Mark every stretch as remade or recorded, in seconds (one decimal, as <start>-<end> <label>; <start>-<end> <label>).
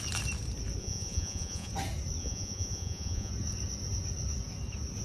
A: 0.0-0.8 recorded; 0.8-1.7 remade; 1.7-2.2 recorded; 2.2-3.3 remade; 3.3-5.0 recorded